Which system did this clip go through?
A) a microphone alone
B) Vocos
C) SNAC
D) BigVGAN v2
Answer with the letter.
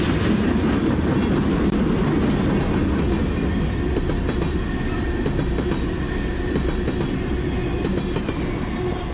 A